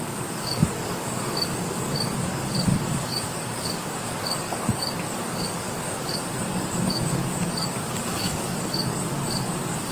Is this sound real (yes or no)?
no